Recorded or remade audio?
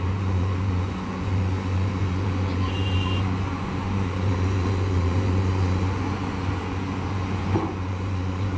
remade